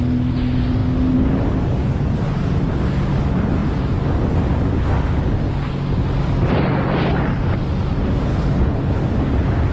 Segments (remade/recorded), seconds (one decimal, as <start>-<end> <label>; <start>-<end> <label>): 0.0-8.3 recorded; 8.3-9.0 remade; 9.0-9.7 recorded

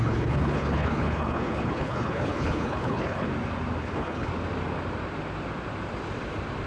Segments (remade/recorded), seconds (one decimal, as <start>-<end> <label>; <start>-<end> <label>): 0.0-3.3 remade; 3.3-3.8 recorded; 3.8-4.3 remade; 4.3-6.7 recorded